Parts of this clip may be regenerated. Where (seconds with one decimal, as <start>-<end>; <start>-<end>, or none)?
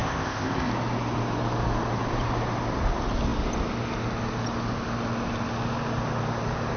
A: 0.0-0.7